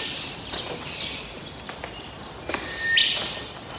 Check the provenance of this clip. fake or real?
real